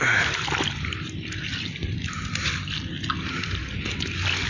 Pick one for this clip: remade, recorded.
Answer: recorded